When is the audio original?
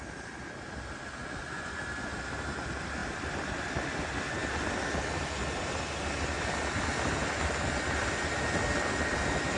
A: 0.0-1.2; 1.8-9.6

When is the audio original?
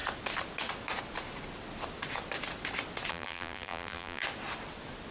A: 0.0-3.1; 4.2-5.1